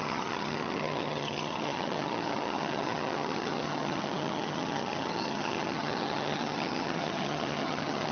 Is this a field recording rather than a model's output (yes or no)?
no